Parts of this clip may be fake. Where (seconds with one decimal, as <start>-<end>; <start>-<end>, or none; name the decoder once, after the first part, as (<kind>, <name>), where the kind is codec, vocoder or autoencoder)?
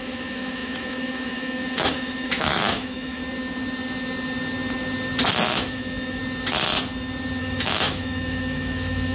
0.0-3.2 (autoencoder, DAC-VAE); 5.5-6.2; 7.4-9.1